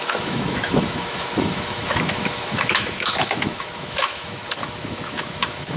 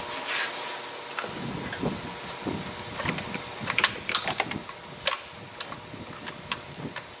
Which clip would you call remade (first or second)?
first